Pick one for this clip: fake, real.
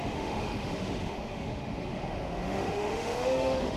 fake